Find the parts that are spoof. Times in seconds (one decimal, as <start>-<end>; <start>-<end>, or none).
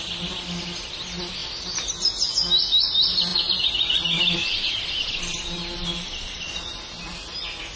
none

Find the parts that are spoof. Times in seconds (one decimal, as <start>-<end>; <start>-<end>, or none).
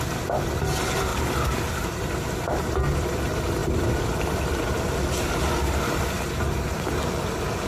1.1-2.0; 3.6-6.8